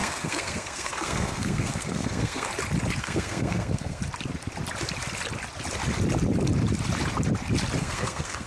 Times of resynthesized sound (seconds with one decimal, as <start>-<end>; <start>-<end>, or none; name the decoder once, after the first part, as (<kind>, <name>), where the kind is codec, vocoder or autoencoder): 0.0-2.5 (codec, SNAC); 3.0-4.0; 7.8-8.5